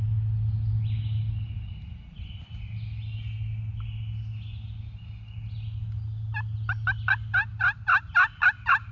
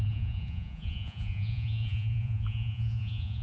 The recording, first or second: first